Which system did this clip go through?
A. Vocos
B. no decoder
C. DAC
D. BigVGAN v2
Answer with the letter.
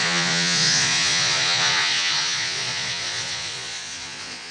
A